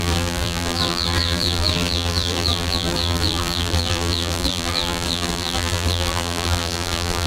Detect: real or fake fake